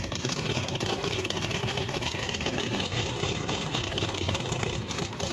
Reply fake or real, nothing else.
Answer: fake